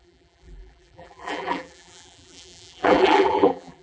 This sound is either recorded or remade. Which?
remade